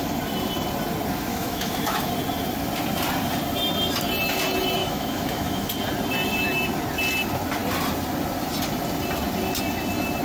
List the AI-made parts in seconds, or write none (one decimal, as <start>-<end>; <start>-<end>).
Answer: 1.3-2.1; 4.8-5.7